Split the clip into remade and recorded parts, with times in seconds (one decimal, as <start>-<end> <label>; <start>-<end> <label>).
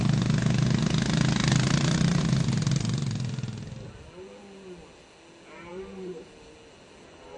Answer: 0.0-1.4 recorded; 1.4-2.2 remade; 2.2-5.7 recorded; 5.7-6.3 remade; 6.3-7.4 recorded